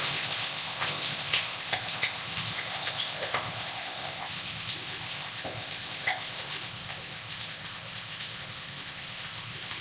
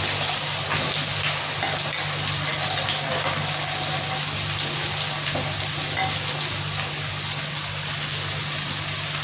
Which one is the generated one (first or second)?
first